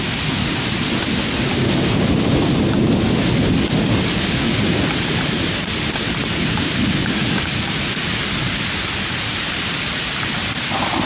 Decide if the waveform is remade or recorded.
recorded